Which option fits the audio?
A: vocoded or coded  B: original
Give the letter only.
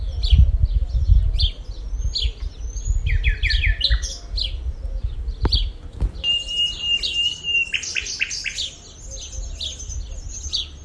B